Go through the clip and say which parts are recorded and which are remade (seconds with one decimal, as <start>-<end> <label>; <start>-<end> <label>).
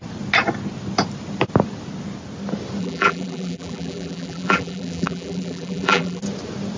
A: 0.0-2.8 recorded; 2.8-6.2 remade; 6.2-6.8 recorded